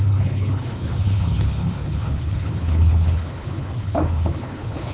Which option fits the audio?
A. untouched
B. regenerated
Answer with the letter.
B